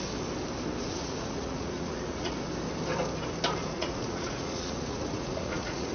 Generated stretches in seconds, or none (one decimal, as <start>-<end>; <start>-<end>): 0.8-2.5; 3.6-5.9